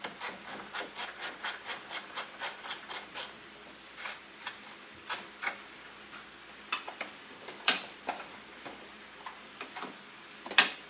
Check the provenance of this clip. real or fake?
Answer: fake